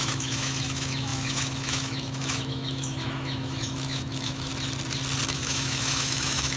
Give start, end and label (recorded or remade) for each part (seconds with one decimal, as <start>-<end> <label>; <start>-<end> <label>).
0.0-4.5 remade; 4.5-5.3 recorded; 5.3-6.6 remade